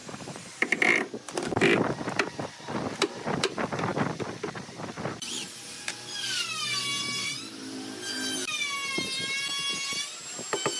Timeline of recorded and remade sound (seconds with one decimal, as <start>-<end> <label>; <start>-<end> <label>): 0.0-10.8 recorded